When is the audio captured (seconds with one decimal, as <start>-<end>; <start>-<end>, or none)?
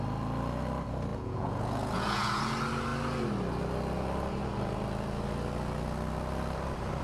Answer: 0.0-1.1; 2.4-7.0